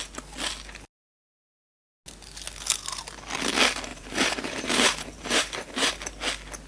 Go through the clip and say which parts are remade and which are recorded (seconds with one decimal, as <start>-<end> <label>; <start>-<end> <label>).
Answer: 0.0-3.9 recorded; 3.9-5.9 remade; 5.9-6.7 recorded